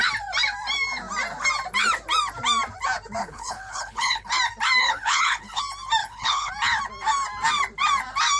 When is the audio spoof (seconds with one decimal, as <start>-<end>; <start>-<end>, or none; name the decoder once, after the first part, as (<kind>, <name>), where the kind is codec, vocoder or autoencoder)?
3.2-4.3 (codec, HILCodec); 4.8-5.6; 6.0-6.5